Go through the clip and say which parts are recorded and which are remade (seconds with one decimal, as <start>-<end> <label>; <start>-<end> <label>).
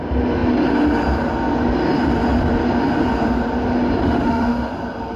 0.0-4.0 recorded; 4.0-4.7 remade; 4.7-5.2 recorded